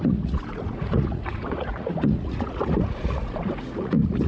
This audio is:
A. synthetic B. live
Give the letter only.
A